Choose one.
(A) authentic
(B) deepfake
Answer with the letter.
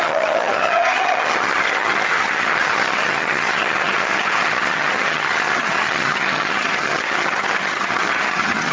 B